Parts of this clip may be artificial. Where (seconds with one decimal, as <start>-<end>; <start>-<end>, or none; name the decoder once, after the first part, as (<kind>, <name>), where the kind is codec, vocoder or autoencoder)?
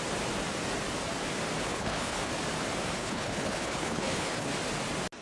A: 1.7-2.3 (codec, HILCodec); 3.0-4.5